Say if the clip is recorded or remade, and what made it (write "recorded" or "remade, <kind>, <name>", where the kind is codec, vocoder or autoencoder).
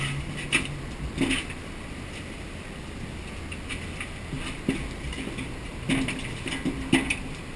recorded